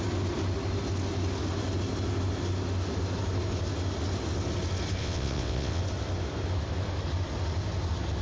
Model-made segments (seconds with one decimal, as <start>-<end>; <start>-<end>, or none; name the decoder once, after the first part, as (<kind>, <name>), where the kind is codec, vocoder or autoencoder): 5.0-5.8 (vocoder, WaveNeXt)